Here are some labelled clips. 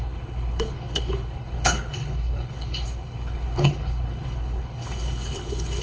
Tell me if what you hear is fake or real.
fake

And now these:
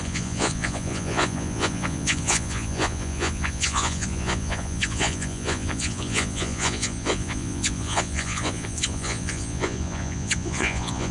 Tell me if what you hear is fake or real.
fake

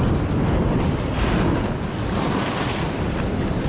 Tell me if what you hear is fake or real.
real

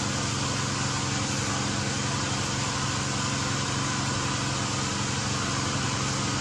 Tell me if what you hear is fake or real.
real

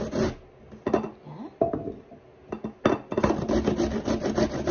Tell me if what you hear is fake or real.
real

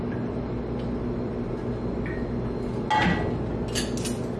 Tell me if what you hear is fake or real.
real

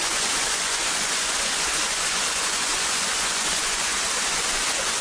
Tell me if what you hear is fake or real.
fake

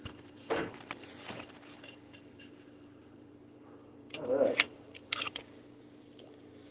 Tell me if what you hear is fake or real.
fake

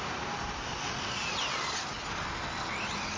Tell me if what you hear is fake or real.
real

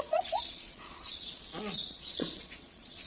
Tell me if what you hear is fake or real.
fake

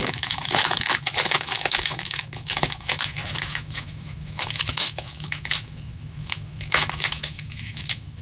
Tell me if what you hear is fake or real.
fake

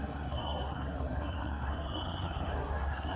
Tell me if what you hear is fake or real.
fake